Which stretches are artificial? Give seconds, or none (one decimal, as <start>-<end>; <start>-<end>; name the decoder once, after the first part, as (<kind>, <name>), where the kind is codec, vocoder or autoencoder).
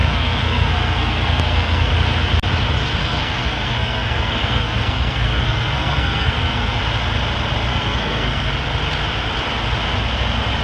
0.0-1.9 (codec, SNAC); 3.0-6.8; 7.7-8.5